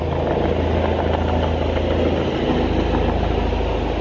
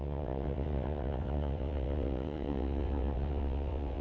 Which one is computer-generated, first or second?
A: second